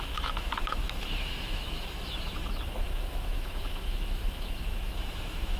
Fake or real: fake